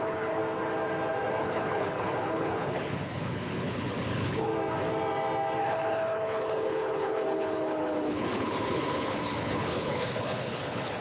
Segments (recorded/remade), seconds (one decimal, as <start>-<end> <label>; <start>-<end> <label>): 0.0-0.4 remade; 0.4-1.4 recorded; 1.4-4.5 remade; 4.5-5.6 recorded; 5.6-11.0 remade